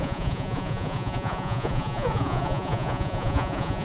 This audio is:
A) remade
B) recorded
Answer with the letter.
A